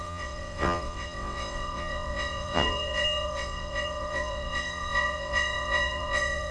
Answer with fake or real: fake